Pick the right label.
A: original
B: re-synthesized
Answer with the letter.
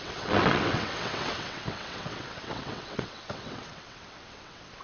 B